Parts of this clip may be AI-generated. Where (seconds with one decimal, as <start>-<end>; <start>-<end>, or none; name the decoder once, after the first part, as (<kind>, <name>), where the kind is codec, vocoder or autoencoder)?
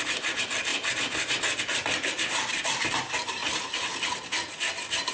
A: none